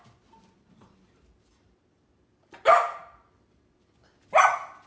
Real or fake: real